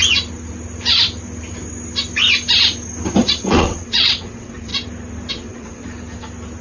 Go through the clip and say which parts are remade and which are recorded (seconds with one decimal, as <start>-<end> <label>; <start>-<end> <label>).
0.0-3.2 recorded; 3.2-4.7 remade; 4.7-5.3 recorded; 5.3-5.8 remade; 5.8-6.6 recorded